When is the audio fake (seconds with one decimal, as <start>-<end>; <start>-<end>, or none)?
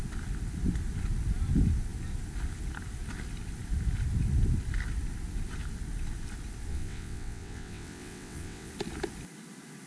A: 6.7-8.7